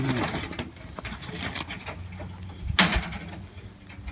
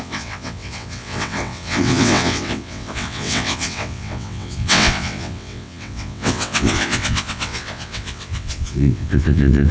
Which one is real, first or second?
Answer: first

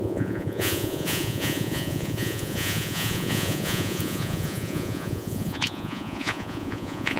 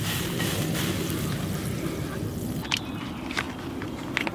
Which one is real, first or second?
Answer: second